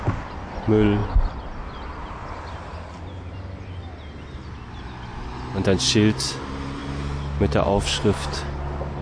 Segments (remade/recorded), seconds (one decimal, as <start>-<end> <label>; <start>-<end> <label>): 0.0-9.0 recorded